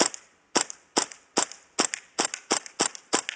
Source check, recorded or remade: recorded